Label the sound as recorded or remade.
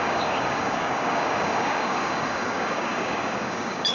remade